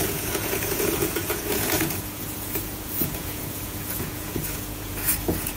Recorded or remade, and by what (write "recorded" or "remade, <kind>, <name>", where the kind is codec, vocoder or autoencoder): remade, vocoder, Vocos